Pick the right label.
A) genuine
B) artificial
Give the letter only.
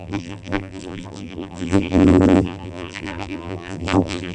B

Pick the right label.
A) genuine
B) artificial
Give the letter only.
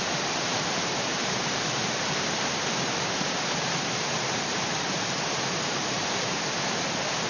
B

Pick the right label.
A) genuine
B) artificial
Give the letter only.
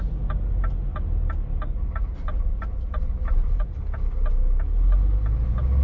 A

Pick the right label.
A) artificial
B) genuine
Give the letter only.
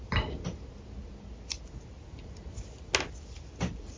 B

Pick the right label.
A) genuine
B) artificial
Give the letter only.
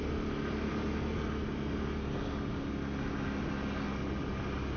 A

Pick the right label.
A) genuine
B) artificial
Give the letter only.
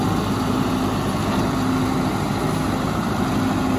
A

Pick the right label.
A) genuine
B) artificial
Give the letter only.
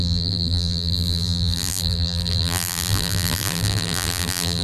B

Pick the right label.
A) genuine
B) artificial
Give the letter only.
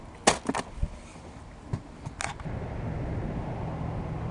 A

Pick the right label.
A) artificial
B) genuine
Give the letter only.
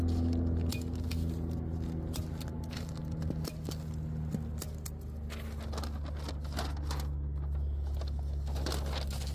B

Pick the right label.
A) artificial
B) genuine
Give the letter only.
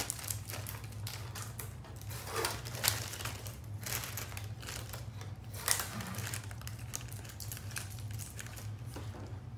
B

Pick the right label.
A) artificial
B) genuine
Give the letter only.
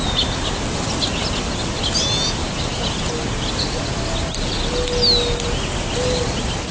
B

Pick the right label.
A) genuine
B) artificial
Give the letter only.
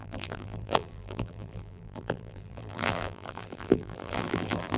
B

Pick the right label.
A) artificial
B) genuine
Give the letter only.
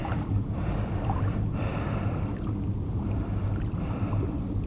A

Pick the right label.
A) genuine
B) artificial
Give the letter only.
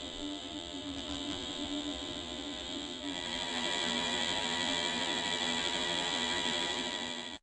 B